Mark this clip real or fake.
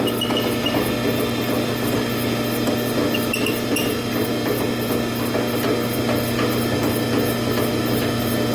real